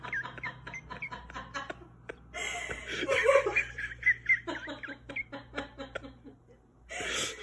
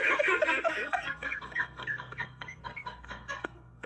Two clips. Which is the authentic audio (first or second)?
first